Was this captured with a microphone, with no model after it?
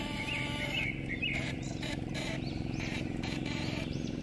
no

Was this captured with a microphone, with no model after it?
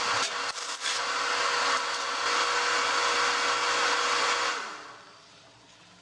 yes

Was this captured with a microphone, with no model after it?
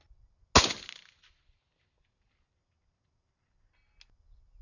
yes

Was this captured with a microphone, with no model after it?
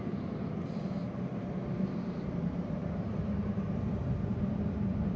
no